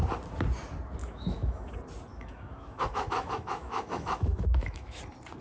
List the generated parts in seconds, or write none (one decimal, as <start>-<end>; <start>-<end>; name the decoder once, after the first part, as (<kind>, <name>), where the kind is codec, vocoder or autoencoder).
1.0-1.7 (autoencoder, DAC-VAE); 2.1-5.0